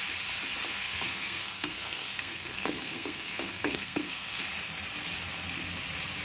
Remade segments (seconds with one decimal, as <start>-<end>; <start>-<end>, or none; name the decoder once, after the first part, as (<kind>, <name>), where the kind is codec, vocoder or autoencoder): 0.7-4.4 (codec, SNAC)